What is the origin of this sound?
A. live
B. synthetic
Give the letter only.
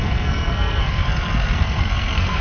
B